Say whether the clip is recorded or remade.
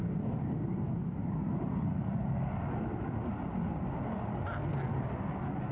recorded